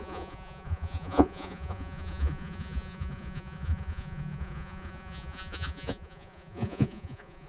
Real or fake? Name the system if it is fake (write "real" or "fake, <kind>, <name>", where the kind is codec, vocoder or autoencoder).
fake, vocoder, Vocos